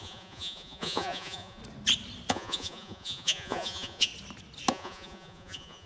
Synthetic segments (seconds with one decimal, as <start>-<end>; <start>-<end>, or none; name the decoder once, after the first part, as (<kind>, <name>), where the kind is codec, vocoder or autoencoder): 0.0-1.6 (vocoder, Vocos); 2.3-4.1; 4.7-5.9